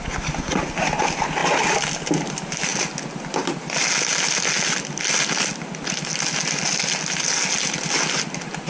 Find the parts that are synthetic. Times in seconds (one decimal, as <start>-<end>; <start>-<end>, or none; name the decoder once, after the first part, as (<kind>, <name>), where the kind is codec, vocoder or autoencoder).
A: none